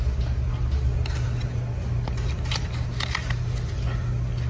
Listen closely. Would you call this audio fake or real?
real